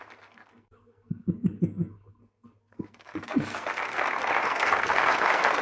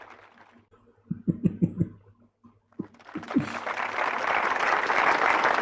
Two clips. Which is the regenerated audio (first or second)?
first